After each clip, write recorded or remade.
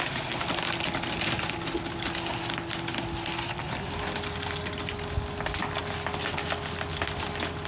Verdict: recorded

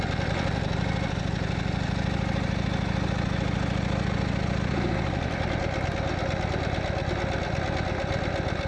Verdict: recorded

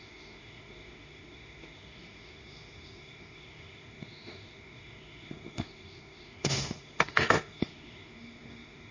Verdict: remade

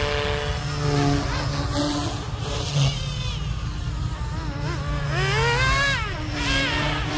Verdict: recorded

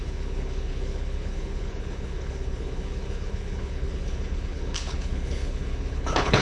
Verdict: remade